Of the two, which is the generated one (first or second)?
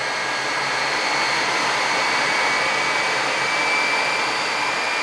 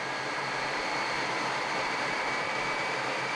second